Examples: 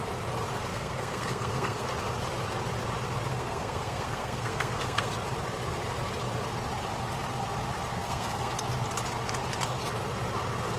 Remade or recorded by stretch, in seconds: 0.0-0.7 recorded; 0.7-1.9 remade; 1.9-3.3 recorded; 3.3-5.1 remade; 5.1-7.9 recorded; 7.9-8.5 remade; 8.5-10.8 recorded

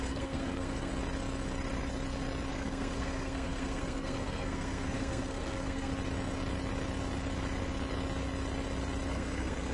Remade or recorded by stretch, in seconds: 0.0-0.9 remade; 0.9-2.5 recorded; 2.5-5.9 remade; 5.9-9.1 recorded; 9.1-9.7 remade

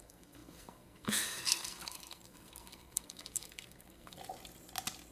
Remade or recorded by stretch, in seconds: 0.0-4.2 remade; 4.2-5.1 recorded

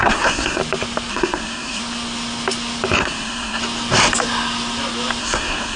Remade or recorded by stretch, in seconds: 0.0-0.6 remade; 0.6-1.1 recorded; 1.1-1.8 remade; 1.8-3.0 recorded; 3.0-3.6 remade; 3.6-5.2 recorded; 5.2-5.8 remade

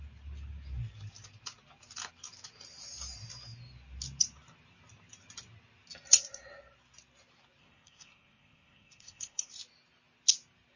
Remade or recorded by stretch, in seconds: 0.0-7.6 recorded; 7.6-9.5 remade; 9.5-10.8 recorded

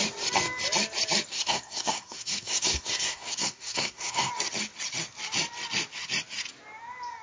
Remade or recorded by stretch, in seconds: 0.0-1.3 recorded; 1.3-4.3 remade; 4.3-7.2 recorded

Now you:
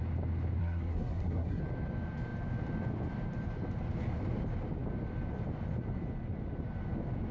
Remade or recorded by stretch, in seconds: 0.0-0.6 recorded; 0.6-1.6 remade; 1.6-7.3 recorded

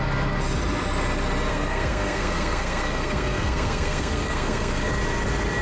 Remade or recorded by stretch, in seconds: 0.0-1.5 recorded; 1.5-4.9 remade; 4.9-5.6 recorded